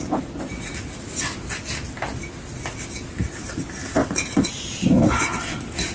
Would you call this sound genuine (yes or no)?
yes